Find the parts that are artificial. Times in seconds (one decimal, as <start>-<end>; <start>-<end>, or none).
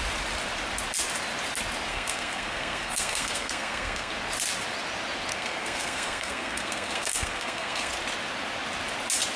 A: 1.9-4.1; 5.3-7.9